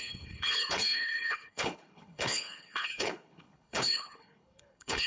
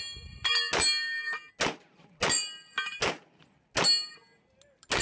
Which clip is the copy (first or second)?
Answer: first